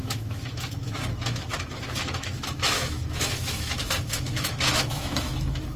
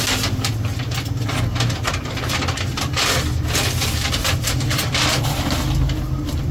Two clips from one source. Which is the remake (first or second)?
first